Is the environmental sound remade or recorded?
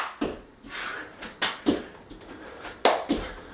recorded